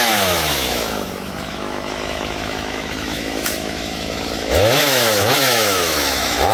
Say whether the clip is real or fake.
fake